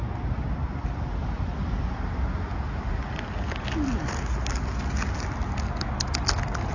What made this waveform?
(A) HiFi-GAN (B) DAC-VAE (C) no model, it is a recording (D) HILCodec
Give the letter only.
C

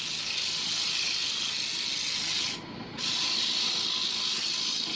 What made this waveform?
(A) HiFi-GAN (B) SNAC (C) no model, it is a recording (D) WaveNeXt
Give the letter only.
C